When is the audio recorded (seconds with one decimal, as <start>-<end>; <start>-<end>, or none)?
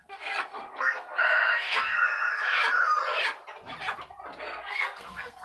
2.4-4.4